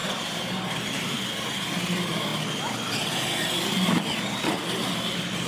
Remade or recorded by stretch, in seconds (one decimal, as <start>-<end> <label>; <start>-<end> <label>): 0.0-5.5 recorded